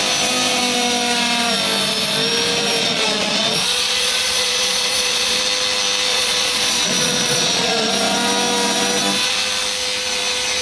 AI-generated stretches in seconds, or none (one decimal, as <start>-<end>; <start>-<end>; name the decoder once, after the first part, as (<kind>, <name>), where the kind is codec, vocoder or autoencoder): 2.8-5.4 (vocoder, Vocos); 6.1-7.9